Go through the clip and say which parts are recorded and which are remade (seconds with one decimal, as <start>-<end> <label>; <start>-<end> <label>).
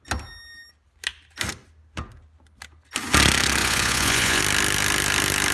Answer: 0.0-3.6 recorded; 3.6-4.4 remade; 4.4-5.5 recorded